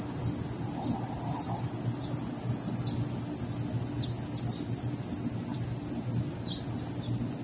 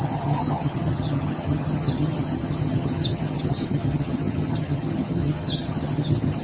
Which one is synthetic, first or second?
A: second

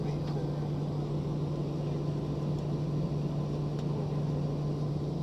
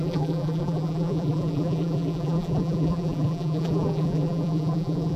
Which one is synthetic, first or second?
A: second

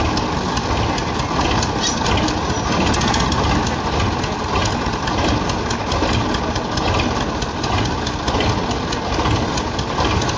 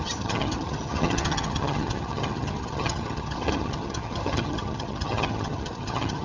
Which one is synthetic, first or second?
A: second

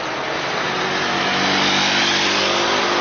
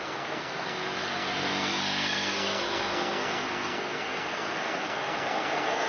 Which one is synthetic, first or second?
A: second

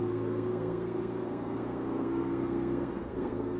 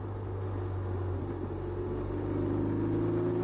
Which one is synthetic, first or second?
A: first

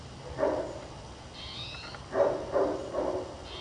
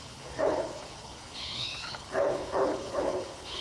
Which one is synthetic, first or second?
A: second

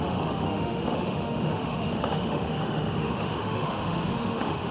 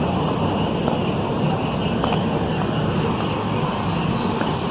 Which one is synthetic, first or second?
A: first